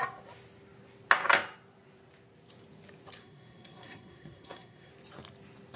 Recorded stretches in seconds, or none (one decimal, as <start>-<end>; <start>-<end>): 0.0-3.2; 4.9-5.8